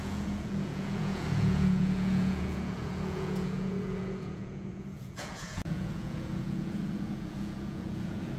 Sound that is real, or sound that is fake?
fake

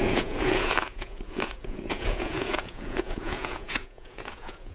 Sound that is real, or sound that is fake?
fake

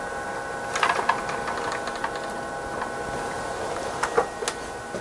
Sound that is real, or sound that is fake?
real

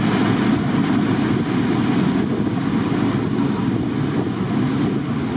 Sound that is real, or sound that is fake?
real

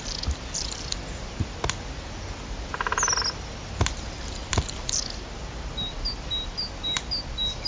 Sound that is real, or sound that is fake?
real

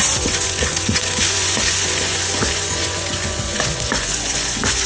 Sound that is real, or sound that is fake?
fake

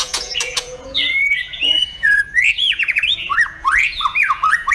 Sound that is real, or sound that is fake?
fake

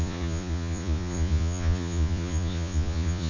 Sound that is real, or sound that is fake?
fake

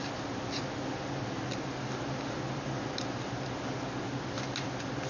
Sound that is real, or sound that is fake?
real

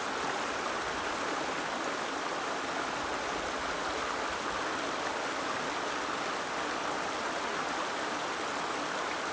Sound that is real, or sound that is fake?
real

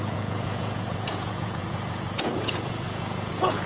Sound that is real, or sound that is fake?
fake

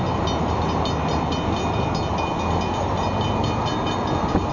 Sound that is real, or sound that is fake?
real